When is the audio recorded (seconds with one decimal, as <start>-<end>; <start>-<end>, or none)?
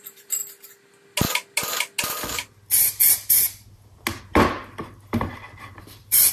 0.4-4.2; 4.8-5.7